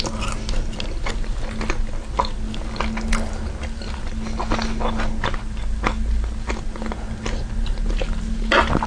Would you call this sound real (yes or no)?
yes